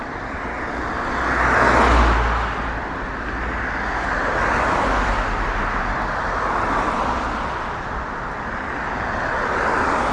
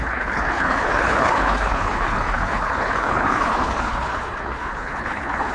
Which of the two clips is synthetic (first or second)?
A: second